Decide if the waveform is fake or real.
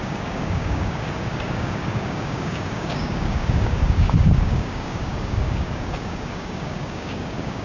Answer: fake